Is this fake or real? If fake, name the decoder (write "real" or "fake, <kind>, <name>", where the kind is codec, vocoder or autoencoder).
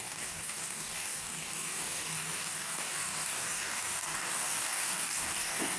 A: fake, codec, DAC